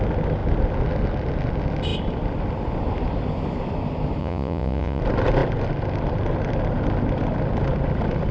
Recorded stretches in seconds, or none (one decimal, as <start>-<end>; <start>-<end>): 0.0-4.2; 5.0-8.3